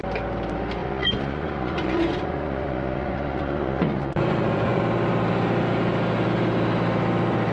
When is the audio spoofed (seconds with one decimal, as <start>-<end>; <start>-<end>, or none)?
0.8-4.8